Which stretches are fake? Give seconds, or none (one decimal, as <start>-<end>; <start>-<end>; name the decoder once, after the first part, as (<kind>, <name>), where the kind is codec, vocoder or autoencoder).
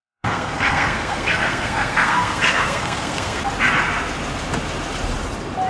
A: 0.0-3.4 (codec, SNAC)